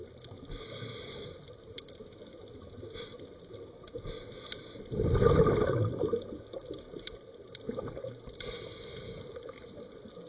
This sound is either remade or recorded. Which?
recorded